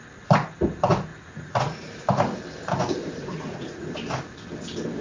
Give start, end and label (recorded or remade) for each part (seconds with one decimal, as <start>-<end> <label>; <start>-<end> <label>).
0.0-1.1 recorded; 1.1-2.0 remade; 2.0-3.0 recorded; 3.0-3.9 remade; 3.9-5.0 recorded